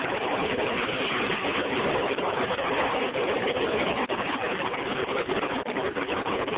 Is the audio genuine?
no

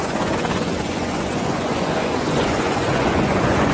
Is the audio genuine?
no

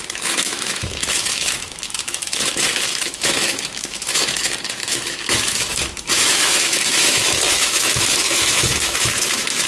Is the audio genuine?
no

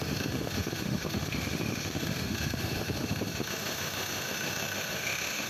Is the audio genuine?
no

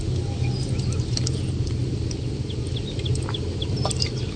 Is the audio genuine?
yes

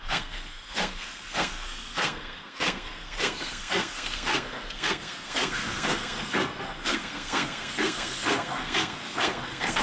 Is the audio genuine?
no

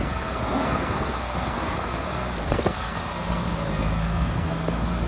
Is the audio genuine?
no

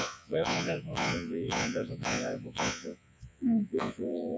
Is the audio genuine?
no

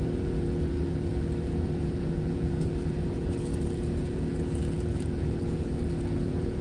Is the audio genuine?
no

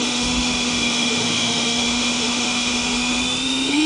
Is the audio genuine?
no